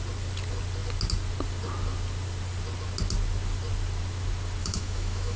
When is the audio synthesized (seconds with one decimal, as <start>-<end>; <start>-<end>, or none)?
4.6-5.4